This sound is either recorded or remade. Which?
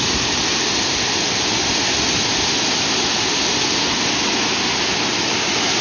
recorded